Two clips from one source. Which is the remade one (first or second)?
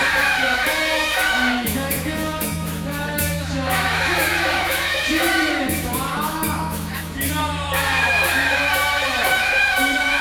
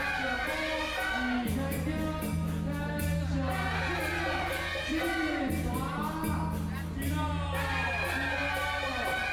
first